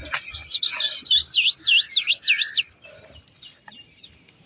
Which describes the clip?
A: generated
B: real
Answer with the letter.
B